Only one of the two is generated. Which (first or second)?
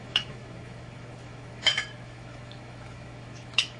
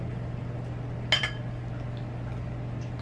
first